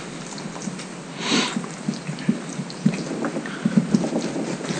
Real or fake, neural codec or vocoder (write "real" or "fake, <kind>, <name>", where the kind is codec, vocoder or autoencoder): real